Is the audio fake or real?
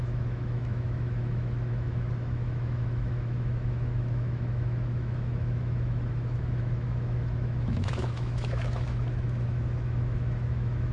fake